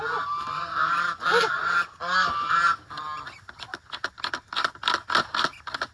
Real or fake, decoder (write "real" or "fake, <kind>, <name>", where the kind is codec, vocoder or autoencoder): real